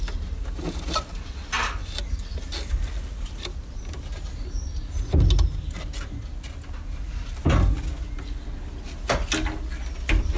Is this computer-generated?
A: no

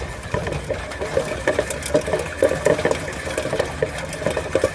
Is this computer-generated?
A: no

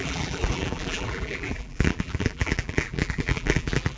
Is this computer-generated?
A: yes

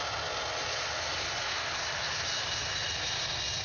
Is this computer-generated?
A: no